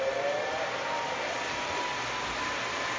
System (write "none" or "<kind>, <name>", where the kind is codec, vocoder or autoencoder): none